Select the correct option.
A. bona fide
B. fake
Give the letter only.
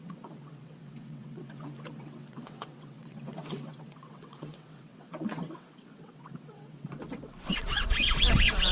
B